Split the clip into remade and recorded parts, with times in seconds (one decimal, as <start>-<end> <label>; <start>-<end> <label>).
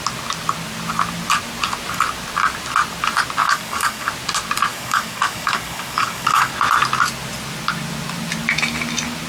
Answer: 0.0-3.4 recorded; 3.4-4.1 remade; 4.1-4.7 recorded; 4.7-6.5 remade; 6.5-9.3 recorded